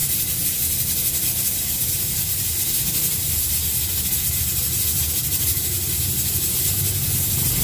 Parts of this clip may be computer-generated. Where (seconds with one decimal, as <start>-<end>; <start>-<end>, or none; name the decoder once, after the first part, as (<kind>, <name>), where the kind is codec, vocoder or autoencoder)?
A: none